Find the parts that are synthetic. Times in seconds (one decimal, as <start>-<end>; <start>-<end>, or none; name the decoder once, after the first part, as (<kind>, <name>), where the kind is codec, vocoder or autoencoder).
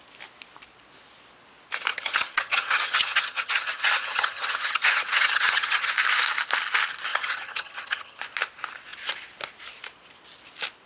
1.9-5.9 (vocoder, HiFi-GAN); 7.1-8.2